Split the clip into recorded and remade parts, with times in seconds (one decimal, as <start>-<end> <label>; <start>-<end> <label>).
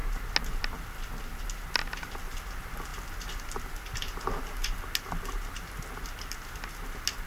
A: 0.0-7.3 recorded